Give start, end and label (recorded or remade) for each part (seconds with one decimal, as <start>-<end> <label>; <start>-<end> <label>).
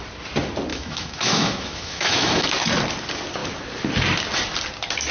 0.0-0.7 recorded; 0.7-2.5 remade; 2.5-5.1 recorded